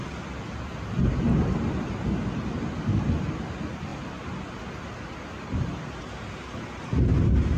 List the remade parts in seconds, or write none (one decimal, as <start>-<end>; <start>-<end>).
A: none